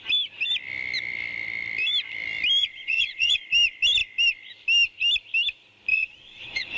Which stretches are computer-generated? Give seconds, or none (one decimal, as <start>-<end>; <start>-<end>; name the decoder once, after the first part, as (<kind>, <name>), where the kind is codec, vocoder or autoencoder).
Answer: 2.6-3.4 (vocoder, Vocos); 5.9-6.8